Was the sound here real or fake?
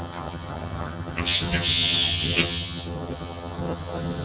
fake